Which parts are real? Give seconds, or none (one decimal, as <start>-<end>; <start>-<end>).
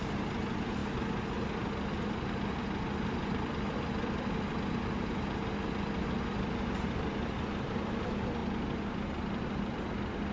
0.0-10.3